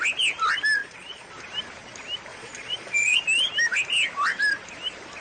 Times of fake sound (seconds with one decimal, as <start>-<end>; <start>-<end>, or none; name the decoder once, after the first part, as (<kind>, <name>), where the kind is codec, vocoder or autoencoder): 0.8-1.3 (vocoder, Vocos); 2.3-3.2